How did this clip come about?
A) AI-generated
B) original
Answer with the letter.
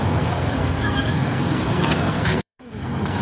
A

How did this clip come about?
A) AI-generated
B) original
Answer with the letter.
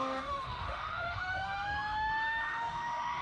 A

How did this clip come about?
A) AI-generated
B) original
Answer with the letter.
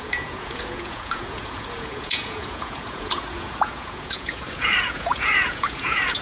A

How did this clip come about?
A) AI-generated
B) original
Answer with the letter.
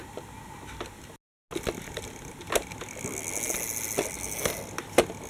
B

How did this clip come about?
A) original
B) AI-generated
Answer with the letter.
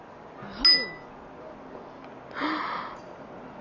A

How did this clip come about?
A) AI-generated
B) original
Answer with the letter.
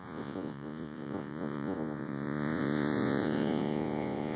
A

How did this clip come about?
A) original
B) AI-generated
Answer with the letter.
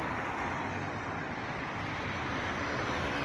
A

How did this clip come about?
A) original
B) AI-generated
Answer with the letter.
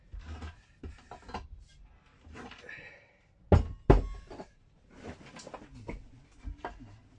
A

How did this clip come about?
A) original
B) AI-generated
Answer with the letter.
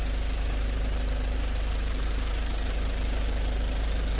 B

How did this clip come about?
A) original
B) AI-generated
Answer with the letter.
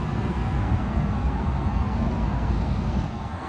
B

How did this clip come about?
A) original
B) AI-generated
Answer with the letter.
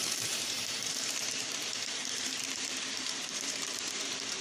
B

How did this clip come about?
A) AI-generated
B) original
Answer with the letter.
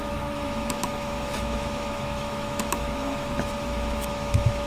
A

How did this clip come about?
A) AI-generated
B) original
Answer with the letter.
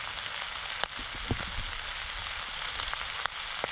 B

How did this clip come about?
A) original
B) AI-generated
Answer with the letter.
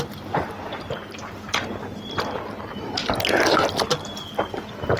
A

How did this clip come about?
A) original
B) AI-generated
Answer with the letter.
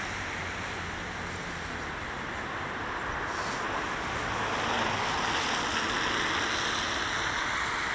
A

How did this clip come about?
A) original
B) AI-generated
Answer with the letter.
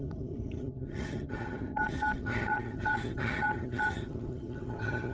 B